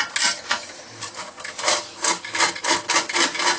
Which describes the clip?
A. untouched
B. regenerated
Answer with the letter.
A